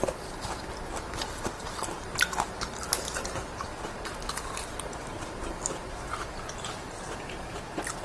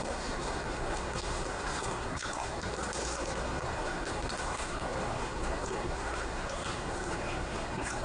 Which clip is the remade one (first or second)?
second